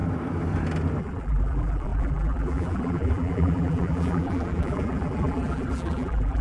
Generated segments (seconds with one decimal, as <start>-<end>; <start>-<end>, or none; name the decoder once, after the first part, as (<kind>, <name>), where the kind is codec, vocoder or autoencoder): 1.0-6.4 (vocoder, BigVGAN v2)

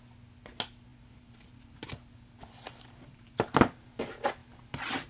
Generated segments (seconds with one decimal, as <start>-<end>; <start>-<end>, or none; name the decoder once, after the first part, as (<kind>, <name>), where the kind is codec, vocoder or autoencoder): 0.9-4.0 (vocoder, BigVGAN v2)

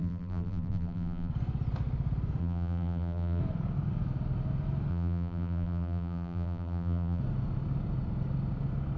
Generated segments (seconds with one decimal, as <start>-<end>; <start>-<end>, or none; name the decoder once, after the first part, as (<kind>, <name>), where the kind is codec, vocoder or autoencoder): 0.0-1.3 (vocoder, BigVGAN v2); 2.4-3.4; 4.9-7.2

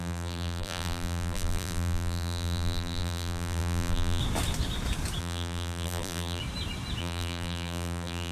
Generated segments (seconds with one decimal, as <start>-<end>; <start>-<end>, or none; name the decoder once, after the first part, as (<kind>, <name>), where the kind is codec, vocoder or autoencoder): 0.0-4.2 (vocoder, BigVGAN v2); 5.2-6.4; 7.0-8.3

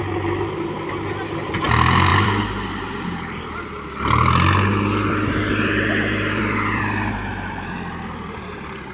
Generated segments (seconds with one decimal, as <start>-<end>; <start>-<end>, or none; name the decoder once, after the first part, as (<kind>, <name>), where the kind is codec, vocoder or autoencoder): 2.1-6.8 (vocoder, BigVGAN v2); 7.3-8.5

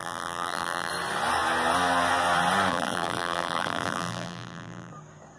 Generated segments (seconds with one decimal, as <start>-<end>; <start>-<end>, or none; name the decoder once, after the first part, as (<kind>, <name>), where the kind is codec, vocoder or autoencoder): 0.0-0.9 (vocoder, BigVGAN v2); 2.7-4.9

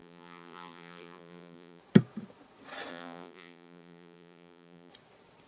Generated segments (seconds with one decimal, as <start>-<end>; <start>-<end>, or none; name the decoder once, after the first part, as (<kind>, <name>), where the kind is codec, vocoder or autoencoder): 0.0-1.8 (vocoder, BigVGAN v2); 2.9-4.9